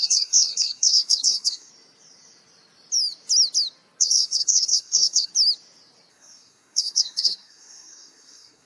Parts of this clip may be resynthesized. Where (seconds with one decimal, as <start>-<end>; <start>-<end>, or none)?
0.0-1.7; 4.0-5.3; 6.1-8.7